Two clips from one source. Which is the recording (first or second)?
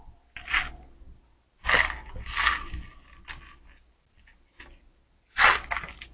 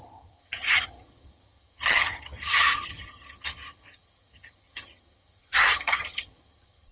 first